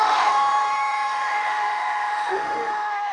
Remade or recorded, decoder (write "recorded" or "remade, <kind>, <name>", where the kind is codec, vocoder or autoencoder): remade, autoencoder, DAC-VAE